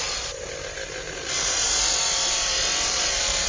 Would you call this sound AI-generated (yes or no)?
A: yes